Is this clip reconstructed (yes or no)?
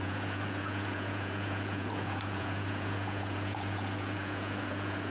yes